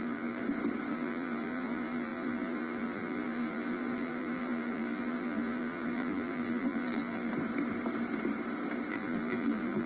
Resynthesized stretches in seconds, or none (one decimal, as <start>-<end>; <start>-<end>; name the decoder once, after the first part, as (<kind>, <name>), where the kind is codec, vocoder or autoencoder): 0.0-0.4 (vocoder, BigVGAN v2); 0.9-7.3; 8.9-9.9